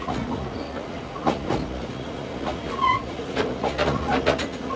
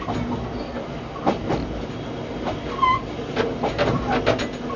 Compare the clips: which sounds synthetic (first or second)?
first